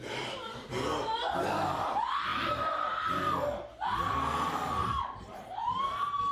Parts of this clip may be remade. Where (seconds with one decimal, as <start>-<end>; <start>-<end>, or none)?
4.8-5.8